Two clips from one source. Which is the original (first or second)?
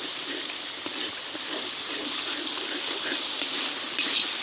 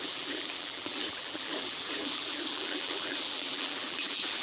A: first